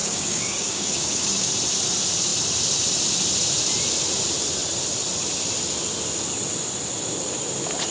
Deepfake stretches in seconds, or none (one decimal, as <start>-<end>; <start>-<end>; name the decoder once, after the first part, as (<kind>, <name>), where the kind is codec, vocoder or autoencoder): 0.0-1.5 (codec, DAC)